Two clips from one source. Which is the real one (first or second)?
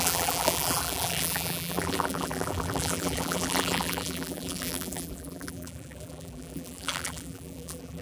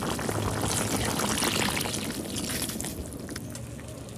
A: second